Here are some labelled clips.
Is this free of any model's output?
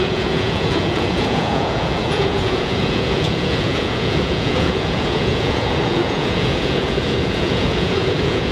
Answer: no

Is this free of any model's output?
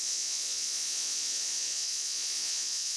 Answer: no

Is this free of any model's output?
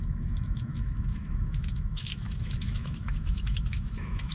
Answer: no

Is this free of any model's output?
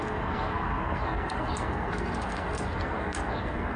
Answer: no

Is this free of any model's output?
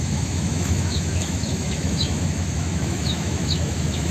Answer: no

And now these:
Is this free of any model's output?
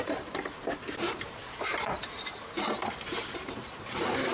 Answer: no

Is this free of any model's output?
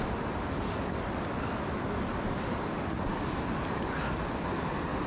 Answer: yes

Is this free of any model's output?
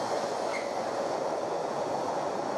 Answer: no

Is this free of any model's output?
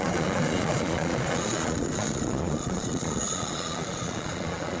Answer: no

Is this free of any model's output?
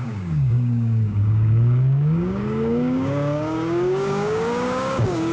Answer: no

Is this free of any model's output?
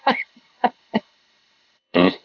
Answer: no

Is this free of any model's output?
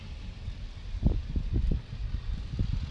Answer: yes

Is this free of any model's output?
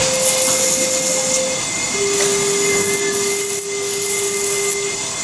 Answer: yes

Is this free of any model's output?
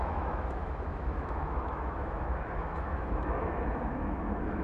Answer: no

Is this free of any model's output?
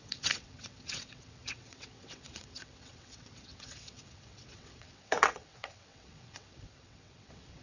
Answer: no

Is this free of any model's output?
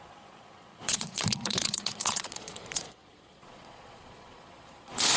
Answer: no